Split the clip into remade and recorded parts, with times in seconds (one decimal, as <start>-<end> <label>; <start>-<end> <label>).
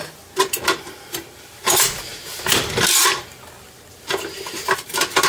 0.0-5.3 recorded